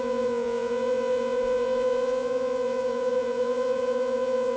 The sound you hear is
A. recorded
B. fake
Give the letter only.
B